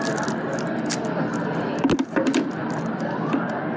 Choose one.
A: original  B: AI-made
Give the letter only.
A